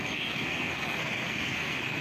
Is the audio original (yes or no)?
no